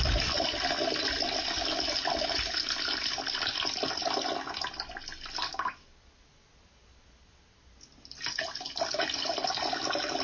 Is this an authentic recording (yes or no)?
yes